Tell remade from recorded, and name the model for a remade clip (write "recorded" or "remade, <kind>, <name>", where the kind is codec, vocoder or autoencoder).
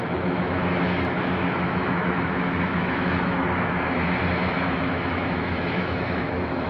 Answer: remade, autoencoder, DAC-VAE